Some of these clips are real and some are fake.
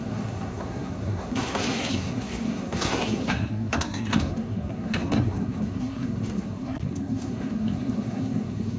fake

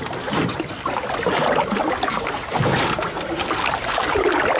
real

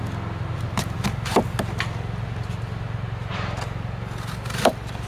real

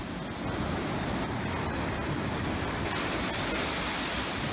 real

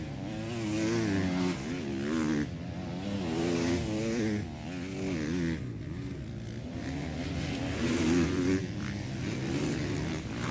real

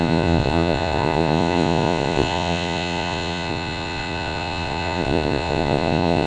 fake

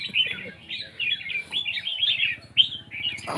real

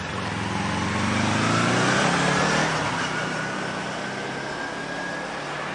real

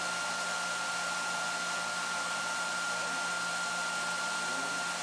real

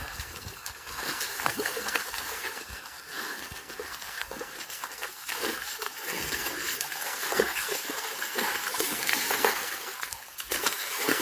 fake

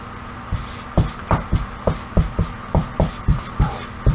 real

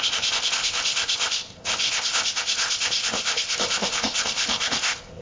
fake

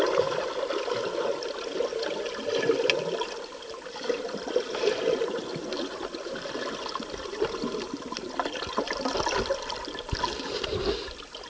real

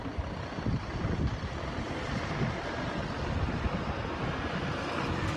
real